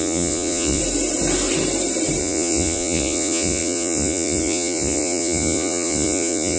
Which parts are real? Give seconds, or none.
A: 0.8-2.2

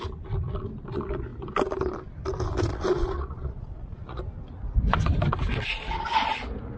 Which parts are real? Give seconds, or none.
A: 0.0-2.7; 4.2-6.8

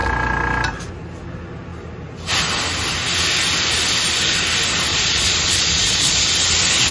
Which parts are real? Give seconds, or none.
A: 0.0-4.9; 6.3-6.9

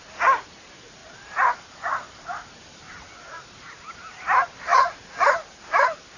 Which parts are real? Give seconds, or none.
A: 0.0-4.7; 5.6-6.2